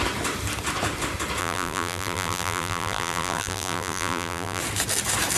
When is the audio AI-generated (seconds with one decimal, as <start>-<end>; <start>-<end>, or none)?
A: 1.4-4.6